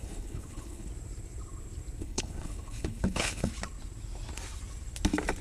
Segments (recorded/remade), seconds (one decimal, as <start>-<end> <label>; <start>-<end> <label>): 0.0-0.9 remade; 0.9-2.0 recorded; 2.0-3.5 remade; 3.5-5.4 recorded